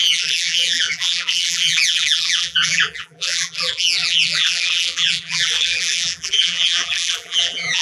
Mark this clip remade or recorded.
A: remade